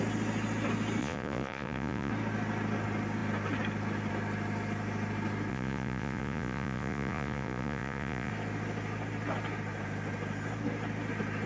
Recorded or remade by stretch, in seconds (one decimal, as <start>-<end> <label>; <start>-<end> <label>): 0.0-1.0 recorded; 1.0-2.1 remade; 2.1-5.5 recorded; 5.5-8.3 remade; 8.3-11.5 recorded